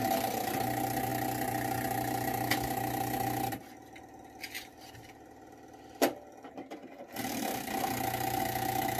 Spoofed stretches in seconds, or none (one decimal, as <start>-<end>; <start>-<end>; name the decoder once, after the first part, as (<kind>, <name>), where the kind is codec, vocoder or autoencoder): none

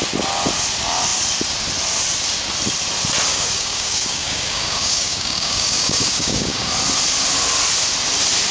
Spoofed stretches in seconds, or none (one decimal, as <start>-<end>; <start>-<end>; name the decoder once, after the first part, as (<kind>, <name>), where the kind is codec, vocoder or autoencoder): 3.3-6.7 (codec, DAC)